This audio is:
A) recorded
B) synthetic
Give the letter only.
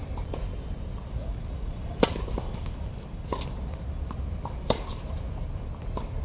B